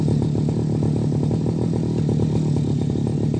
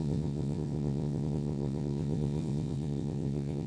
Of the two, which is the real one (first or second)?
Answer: first